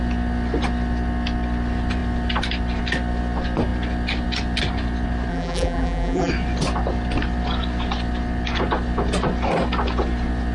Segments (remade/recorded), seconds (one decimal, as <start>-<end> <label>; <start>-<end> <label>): 0.0-5.3 recorded; 5.3-6.3 remade; 6.3-10.5 recorded